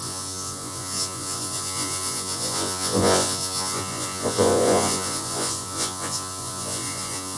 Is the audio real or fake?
fake